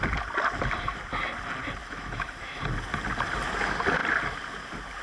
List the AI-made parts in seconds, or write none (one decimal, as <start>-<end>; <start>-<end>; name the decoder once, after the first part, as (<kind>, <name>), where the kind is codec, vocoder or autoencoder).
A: 1.8-2.6 (autoencoder, DAC-VAE)